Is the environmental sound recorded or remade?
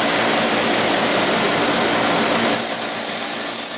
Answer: recorded